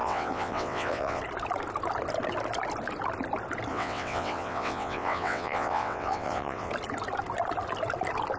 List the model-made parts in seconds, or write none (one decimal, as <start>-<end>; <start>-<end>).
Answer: 0.0-1.2; 3.7-6.7

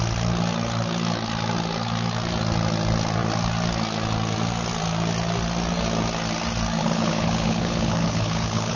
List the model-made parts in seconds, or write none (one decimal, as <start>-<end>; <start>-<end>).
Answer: 6.8-8.8

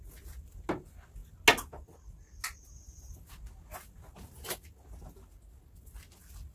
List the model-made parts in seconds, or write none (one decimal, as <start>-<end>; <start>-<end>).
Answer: none

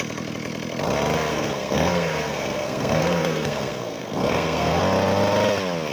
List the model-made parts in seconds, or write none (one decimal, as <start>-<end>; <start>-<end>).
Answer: 1.3-4.8

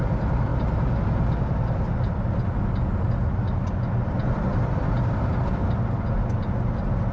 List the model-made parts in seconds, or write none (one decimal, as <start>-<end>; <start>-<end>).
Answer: 0.0-0.5; 4.3-5.6